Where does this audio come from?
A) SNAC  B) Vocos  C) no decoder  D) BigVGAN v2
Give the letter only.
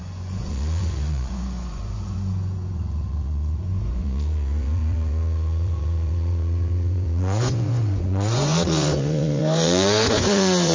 B